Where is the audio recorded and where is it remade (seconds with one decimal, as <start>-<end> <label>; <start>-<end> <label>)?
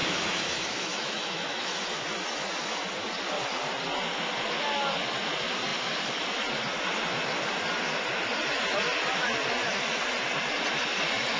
0.0-1.8 remade; 1.8-11.4 recorded